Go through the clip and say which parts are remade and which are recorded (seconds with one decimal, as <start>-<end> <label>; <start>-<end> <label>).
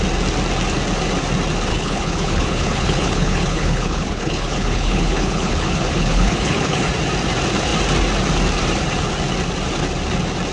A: 0.0-1.7 recorded; 1.7-6.9 remade; 6.9-10.5 recorded